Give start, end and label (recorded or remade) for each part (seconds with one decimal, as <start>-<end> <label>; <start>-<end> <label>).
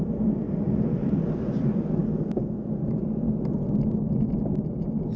0.0-5.2 recorded